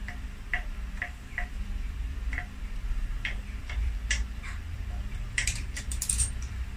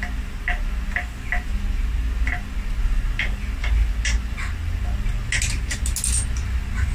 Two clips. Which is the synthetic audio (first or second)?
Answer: first